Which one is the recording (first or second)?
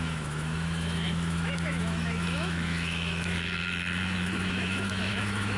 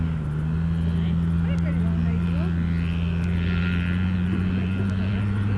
second